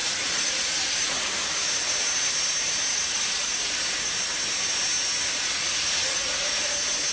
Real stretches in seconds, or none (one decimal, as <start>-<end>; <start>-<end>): 1.3-2.9; 4.1-5.2; 6.5-7.1